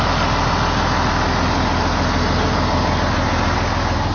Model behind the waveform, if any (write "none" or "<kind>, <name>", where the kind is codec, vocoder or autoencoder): none